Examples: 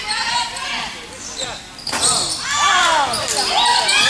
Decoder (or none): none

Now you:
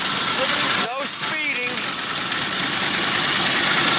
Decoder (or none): none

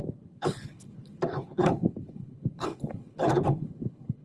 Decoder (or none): codec, HILCodec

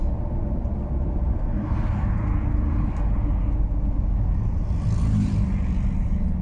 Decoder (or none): none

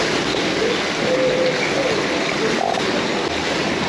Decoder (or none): none